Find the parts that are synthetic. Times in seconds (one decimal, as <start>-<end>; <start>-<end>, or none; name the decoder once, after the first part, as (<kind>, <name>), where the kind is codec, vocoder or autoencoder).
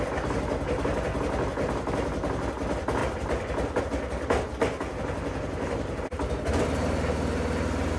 3.0-3.8 (vocoder, BigVGAN v2)